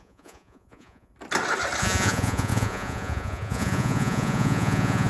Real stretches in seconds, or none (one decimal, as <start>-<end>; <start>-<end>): 1.1-1.8